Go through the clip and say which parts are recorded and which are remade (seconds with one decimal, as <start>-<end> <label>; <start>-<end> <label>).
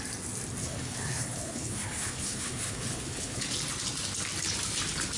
0.0-0.6 recorded; 0.6-3.4 remade; 3.4-5.2 recorded